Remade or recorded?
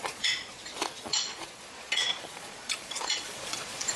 remade